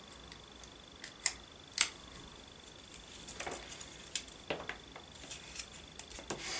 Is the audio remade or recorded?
recorded